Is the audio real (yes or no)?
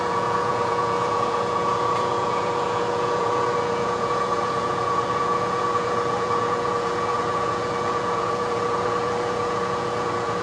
no